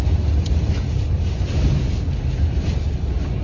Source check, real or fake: real